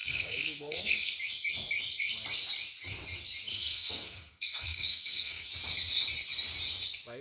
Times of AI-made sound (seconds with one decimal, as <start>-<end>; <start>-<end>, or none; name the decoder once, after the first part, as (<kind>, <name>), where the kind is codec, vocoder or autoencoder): 0.0-1.1 (codec, SNAC); 3.5-5.5